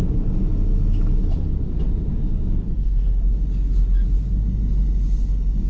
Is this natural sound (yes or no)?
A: yes